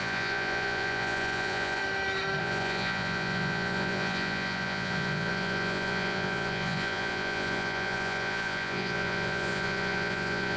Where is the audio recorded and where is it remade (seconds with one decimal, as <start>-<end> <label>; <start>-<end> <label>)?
0.0-1.8 remade; 1.8-2.4 recorded; 2.4-10.6 remade